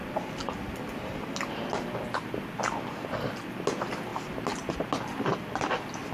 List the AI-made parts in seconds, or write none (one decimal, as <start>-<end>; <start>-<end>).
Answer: none